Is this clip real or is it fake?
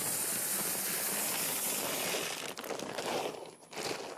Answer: real